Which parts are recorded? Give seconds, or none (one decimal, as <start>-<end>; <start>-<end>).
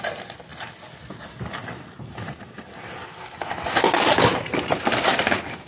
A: 0.0-5.7